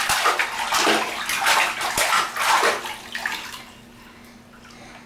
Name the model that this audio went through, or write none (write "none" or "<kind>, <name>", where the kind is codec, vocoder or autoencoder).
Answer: none